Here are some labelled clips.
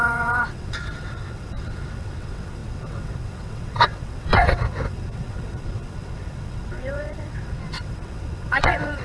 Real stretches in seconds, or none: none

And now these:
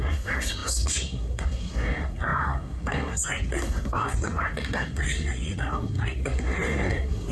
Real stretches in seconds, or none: none